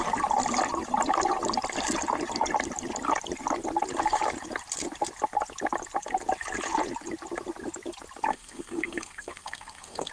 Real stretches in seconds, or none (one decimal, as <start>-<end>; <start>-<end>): 0.0-8.3